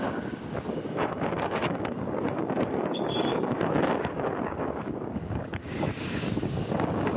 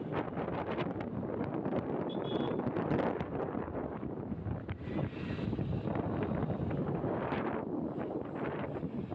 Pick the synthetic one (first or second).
first